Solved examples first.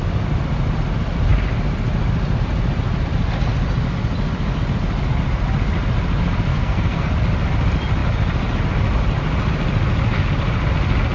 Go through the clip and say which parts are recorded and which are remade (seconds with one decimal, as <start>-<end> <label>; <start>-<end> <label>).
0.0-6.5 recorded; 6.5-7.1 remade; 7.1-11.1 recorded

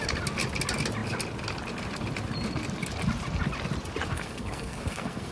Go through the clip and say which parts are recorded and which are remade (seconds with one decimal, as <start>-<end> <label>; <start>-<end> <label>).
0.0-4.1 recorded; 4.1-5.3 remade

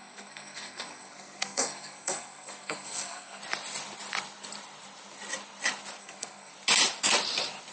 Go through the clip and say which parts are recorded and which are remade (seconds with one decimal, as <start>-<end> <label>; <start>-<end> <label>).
0.0-3.4 remade; 3.4-6.0 recorded; 6.0-6.5 remade; 6.5-7.7 recorded

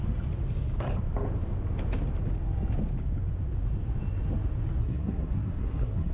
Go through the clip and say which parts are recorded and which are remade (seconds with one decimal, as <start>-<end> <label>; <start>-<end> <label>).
0.0-4.8 recorded; 4.8-6.1 remade

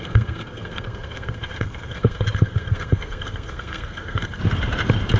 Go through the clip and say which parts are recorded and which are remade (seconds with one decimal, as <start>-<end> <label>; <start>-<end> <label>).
0.0-4.4 remade; 4.4-5.2 recorded

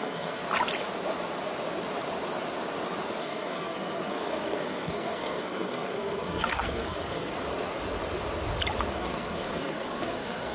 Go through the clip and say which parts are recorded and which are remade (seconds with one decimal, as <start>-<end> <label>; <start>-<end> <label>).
0.0-0.4 remade; 0.4-3.2 recorded; 3.2-7.3 remade; 7.3-8.9 recorded; 8.9-10.5 remade